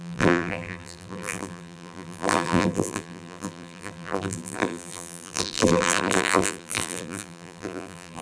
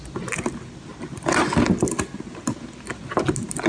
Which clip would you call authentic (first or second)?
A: second